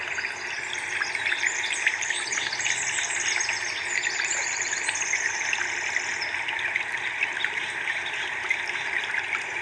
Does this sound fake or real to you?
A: real